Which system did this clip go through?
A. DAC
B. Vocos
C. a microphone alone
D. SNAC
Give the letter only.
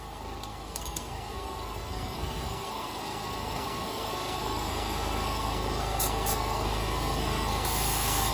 D